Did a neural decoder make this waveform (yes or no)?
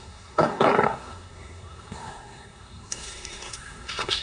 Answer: yes